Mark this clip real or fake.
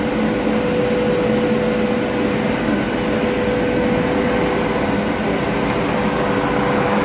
real